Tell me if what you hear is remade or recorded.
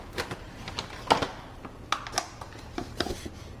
recorded